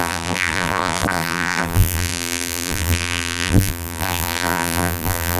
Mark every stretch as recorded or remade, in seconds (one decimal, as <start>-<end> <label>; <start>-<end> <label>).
0.0-5.4 remade